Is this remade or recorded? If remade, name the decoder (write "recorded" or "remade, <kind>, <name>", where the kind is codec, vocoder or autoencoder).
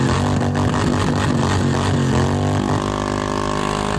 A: recorded